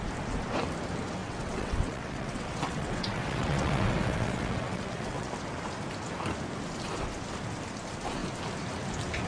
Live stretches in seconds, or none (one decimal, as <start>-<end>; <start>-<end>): 0.0-1.2; 5.3-9.3

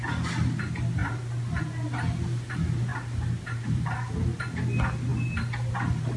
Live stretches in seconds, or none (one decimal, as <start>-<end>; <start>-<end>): 0.0-2.9; 4.1-6.2

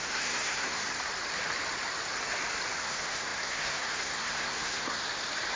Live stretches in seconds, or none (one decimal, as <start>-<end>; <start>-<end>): 0.8-2.8; 5.0-5.6

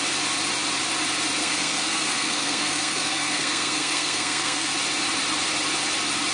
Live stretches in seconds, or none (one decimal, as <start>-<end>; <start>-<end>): 0.0-1.4; 4.7-6.3

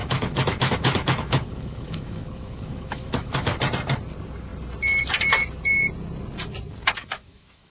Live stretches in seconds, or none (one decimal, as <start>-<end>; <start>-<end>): 3.6-7.0